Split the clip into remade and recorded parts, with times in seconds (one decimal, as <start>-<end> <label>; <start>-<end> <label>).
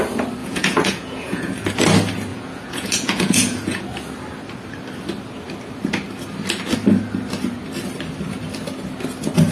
0.0-0.4 recorded; 0.4-1.5 remade; 1.5-2.3 recorded; 2.3-3.8 remade; 3.8-9.5 recorded